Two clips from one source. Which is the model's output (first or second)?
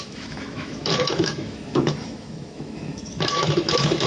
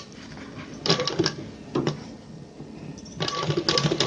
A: first